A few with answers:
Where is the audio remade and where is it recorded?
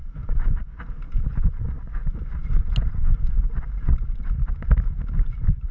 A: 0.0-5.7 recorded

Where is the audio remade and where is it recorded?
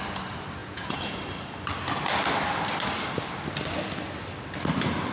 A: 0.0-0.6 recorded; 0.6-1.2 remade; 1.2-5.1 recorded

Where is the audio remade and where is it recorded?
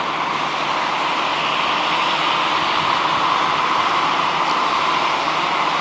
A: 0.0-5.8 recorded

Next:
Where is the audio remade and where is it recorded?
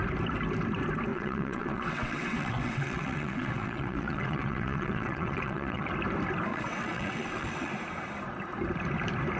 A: 0.0-1.1 recorded; 1.1-5.9 remade; 5.9-6.5 recorded; 6.5-7.7 remade; 7.7-9.4 recorded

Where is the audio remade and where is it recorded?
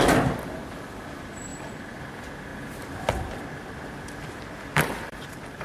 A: 0.0-2.5 remade; 2.5-3.1 recorded; 3.1-5.6 remade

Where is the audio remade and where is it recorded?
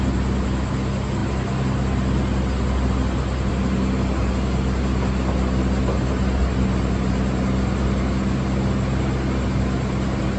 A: 0.0-10.4 recorded